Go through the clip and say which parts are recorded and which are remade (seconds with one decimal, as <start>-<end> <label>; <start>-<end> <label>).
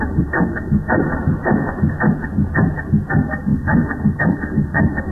0.0-1.0 remade; 1.0-3.1 recorded; 3.1-5.1 remade